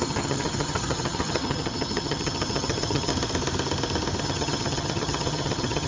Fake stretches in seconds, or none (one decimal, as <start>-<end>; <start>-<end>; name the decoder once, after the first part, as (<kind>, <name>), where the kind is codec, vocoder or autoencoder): 0.0-3.1 (vocoder, HiFi-GAN); 4.2-5.9